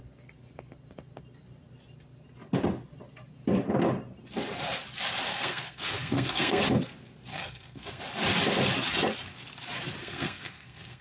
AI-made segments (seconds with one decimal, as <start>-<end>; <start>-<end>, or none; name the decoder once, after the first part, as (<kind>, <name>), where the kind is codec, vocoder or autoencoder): 5.3-6.6 (codec, SNAC); 7.3-8.0; 10.0-11.0